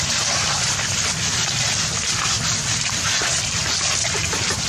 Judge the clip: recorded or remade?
recorded